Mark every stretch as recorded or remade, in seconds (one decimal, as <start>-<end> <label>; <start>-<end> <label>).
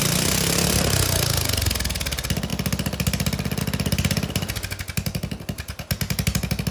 0.0-6.7 recorded